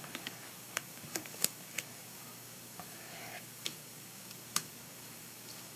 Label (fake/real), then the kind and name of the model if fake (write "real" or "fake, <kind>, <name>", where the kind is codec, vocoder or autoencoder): fake, codec, DAC